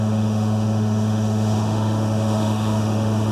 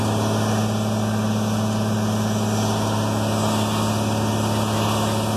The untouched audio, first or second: second